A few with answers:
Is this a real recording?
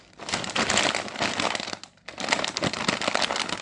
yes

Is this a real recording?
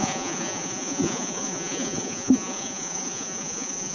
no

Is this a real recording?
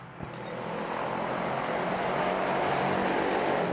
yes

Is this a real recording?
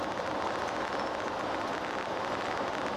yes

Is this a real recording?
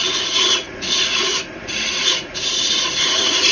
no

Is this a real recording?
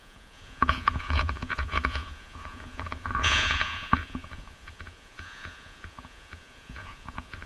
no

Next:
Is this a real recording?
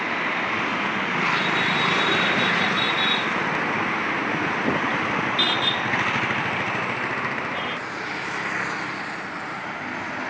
yes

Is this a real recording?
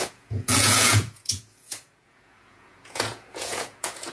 no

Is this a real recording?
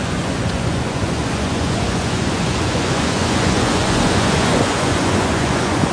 no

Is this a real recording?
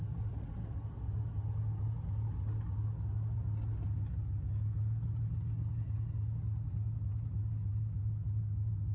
yes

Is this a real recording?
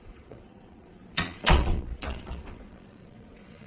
no